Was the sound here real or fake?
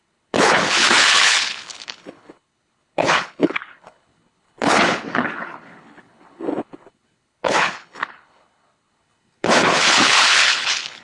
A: fake